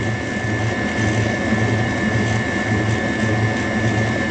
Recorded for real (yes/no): yes